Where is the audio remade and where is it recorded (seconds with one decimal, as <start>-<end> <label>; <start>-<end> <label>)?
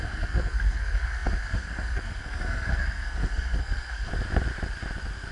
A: 0.0-4.1 remade; 4.1-5.3 recorded